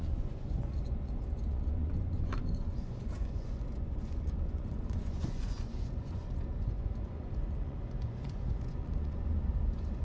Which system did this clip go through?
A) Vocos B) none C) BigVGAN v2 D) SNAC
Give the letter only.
A